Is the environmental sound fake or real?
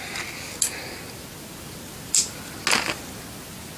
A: real